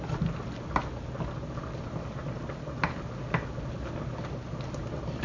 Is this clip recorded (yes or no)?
yes